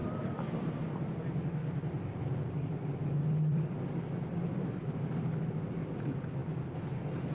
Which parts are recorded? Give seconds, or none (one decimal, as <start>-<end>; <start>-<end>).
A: 1.2-1.6; 5.9-7.3

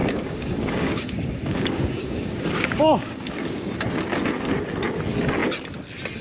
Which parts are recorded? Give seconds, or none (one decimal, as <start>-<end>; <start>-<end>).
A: 3.7-6.2